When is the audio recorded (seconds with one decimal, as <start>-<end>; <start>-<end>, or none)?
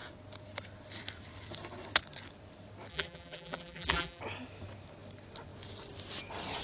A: 0.0-2.9; 4.2-6.6